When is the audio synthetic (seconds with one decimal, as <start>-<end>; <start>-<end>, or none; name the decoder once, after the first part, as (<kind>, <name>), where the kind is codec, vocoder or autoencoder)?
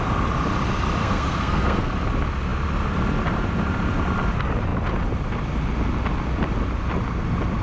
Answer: 1.0-1.9 (codec, SNAC)